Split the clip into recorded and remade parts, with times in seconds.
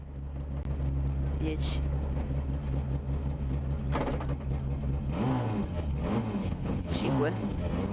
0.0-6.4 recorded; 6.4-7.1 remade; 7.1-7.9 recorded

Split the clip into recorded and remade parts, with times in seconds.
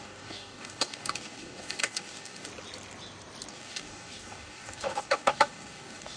0.0-2.5 remade; 2.5-3.5 recorded; 3.5-6.2 remade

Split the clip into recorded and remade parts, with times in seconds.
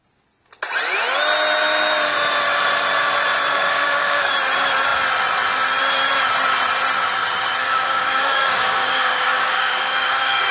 0.0-3.5 recorded; 3.5-4.3 remade; 4.3-7.6 recorded; 7.6-10.5 remade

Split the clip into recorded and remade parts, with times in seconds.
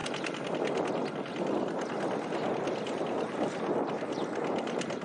0.0-5.0 recorded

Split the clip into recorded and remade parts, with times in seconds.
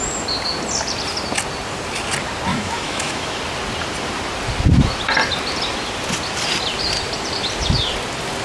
0.0-2.5 recorded; 2.5-3.4 remade; 3.4-8.4 recorded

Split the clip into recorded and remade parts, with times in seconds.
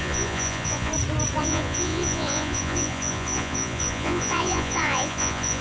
0.0-0.9 remade; 0.9-1.4 recorded; 1.4-5.6 remade